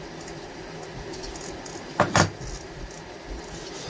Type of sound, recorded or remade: recorded